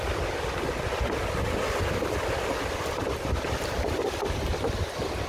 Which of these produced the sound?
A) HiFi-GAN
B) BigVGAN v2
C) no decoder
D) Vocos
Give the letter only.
C